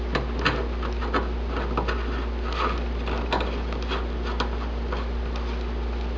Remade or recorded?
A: recorded